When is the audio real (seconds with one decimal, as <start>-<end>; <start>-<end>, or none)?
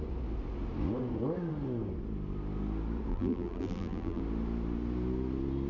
0.0-3.1; 4.2-5.7